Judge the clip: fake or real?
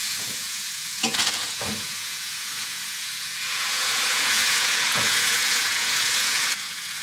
fake